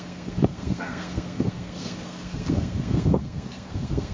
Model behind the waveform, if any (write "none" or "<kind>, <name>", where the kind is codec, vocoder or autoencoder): codec, SNAC